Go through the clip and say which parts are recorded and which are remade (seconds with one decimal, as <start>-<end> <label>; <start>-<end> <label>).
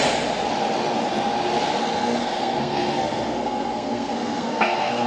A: 0.0-1.8 recorded; 1.8-5.1 remade